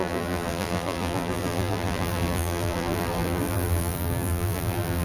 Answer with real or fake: fake